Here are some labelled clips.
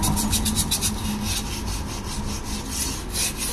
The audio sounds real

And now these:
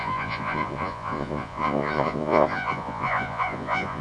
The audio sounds fake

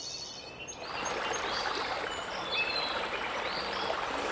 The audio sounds real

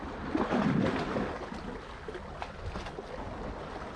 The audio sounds real